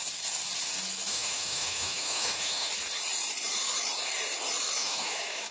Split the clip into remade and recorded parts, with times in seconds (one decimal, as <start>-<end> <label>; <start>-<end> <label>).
0.0-1.1 recorded; 1.1-2.7 remade; 2.7-4.8 recorded; 4.8-5.5 remade